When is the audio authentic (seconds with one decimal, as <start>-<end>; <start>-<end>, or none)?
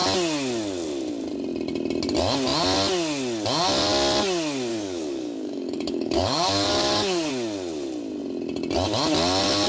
0.0-4.7; 7.3-9.7